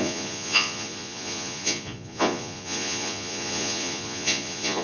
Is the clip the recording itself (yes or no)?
no